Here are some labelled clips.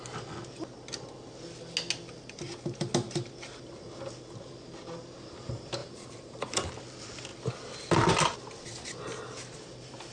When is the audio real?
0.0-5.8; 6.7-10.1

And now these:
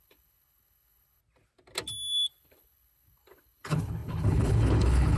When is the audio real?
1.2-2.3